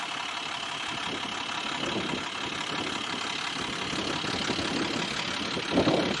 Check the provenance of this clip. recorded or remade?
recorded